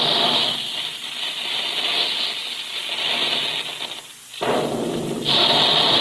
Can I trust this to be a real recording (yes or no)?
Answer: yes